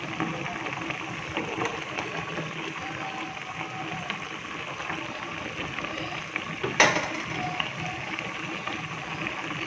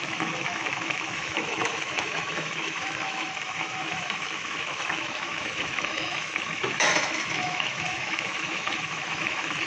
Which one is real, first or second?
first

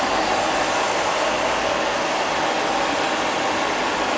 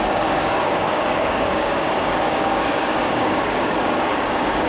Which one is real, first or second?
first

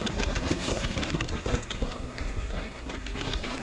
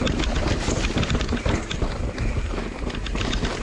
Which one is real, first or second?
second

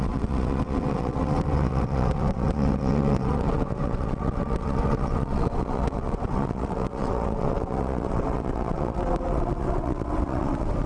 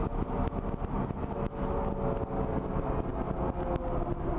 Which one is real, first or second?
second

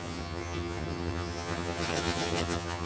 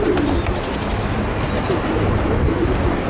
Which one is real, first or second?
second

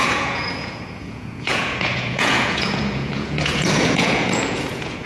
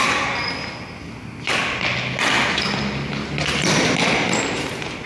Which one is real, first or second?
second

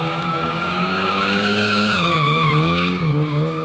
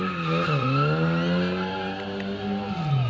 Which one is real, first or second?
second